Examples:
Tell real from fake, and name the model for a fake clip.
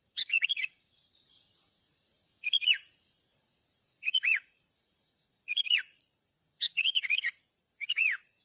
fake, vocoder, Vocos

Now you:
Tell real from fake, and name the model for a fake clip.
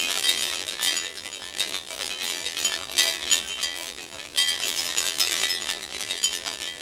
fake, vocoder, BigVGAN v2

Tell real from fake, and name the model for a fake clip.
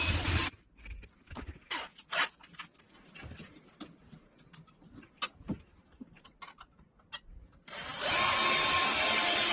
real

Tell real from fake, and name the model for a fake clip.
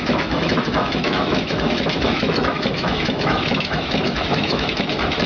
fake, autoencoder, DAC-VAE